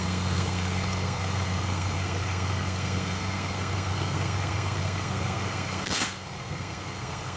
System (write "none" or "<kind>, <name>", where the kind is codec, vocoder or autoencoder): codec, SNAC